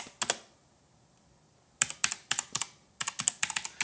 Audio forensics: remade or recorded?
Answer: recorded